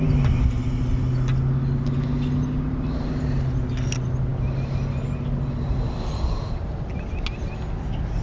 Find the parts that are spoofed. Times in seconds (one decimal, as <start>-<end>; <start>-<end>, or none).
none